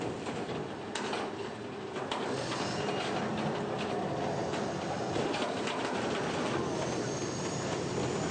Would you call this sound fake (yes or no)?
no